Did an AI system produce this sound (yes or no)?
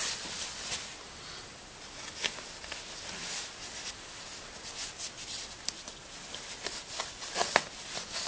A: no